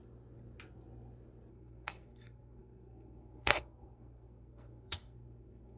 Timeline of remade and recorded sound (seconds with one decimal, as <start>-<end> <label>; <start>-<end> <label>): 0.0-1.5 recorded; 1.5-5.8 remade

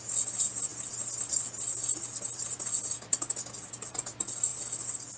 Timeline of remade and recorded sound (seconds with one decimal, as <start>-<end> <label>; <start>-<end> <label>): 0.0-5.2 recorded